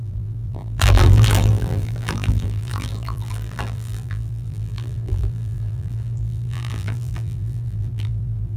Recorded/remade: remade